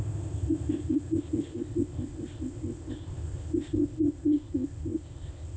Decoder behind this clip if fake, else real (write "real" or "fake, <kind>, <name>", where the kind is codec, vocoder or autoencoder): fake, codec, ZipCodec